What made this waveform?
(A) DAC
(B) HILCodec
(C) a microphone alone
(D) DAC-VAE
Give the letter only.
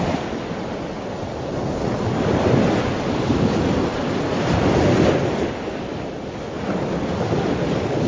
C